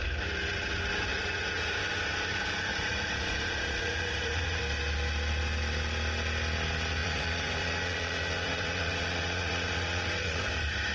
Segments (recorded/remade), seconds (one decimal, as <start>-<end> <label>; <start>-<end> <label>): 0.0-1.1 recorded; 1.1-1.8 remade; 1.8-2.7 recorded; 2.7-4.6 remade; 4.6-7.0 recorded; 7.0-10.4 remade; 10.4-10.9 recorded